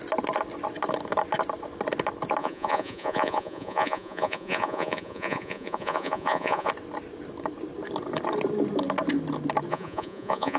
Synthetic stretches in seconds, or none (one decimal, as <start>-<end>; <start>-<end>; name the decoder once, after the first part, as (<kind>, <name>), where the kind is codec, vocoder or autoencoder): 2.4-6.7 (vocoder, Vocos); 9.7-10.6